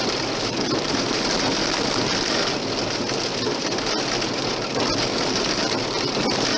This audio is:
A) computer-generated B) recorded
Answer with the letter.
B